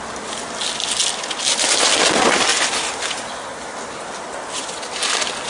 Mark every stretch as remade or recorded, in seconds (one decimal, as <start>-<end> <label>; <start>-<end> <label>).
0.0-5.5 recorded